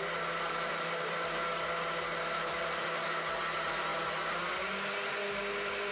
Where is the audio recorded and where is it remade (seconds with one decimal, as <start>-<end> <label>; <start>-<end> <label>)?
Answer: 0.0-5.9 recorded